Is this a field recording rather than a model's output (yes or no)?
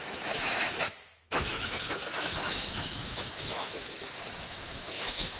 no